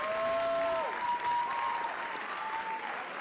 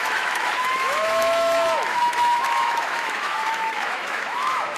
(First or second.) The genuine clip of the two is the first